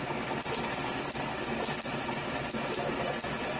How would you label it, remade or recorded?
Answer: recorded